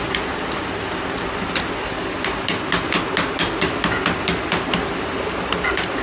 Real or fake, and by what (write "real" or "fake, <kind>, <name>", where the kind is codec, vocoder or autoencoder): real